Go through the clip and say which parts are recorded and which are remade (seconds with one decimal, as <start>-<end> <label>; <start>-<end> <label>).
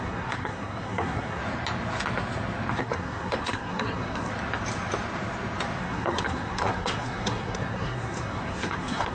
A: 0.0-1.4 remade; 1.4-2.8 recorded; 2.8-4.3 remade; 4.3-5.8 recorded; 5.8-9.1 remade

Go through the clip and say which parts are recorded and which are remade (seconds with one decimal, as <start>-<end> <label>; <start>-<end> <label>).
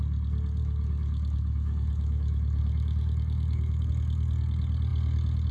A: 0.0-0.6 recorded; 0.6-3.9 remade; 3.9-5.5 recorded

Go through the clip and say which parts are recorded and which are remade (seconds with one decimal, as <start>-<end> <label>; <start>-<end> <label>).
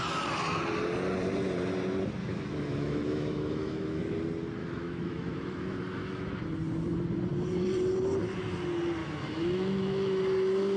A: 0.0-2.2 recorded; 2.2-4.0 remade; 4.0-4.6 recorded; 4.6-6.3 remade; 6.3-9.0 recorded; 9.0-10.2 remade; 10.2-10.8 recorded